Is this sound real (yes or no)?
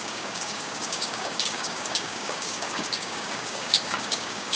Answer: no